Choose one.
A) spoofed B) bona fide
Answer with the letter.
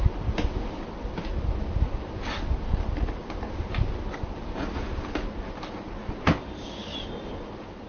B